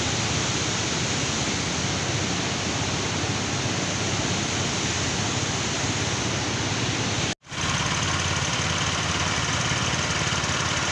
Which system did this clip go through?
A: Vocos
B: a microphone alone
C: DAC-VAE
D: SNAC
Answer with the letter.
B